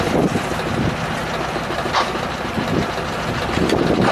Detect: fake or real real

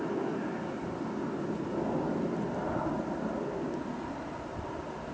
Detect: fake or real real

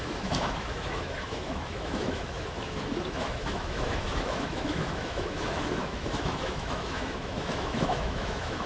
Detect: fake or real fake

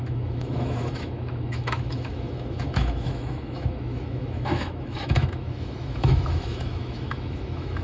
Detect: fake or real fake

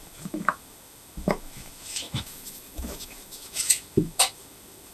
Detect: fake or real fake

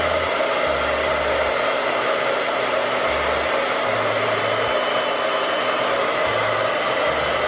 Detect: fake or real real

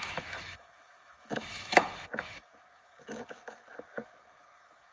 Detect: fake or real fake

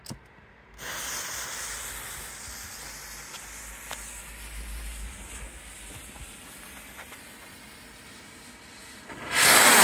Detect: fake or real real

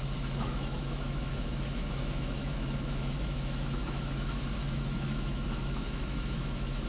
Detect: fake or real fake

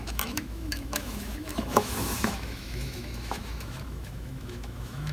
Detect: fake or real fake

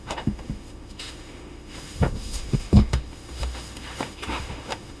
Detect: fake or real fake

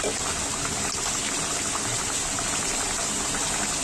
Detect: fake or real real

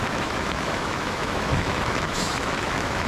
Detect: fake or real fake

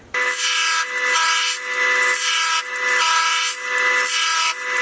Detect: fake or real real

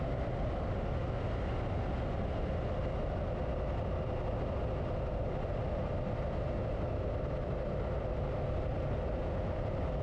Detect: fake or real real